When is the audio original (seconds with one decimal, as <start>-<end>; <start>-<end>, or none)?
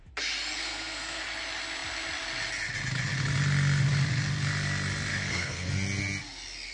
0.0-0.6; 1.2-5.1; 5.7-6.7